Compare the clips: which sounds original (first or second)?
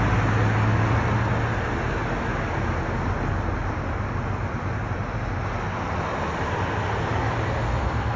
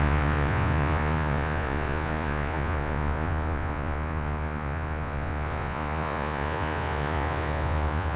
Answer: first